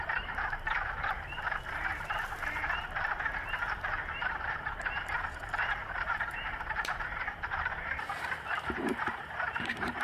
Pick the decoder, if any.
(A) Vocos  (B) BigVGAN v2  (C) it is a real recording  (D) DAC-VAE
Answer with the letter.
B